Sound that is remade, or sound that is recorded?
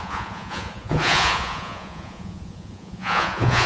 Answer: remade